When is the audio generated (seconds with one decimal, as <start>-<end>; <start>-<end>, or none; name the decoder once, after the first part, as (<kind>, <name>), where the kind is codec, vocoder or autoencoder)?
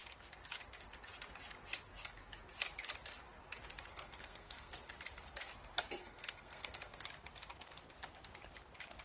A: 3.9-4.7 (codec, SNAC); 6.0-7.0